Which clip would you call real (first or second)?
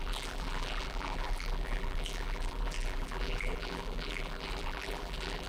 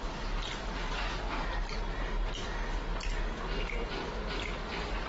second